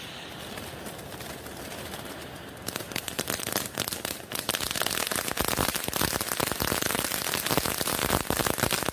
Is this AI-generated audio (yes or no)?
yes